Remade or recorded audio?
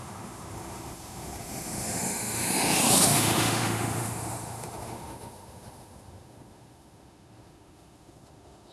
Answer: remade